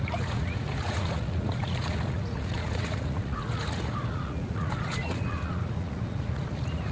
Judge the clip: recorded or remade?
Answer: remade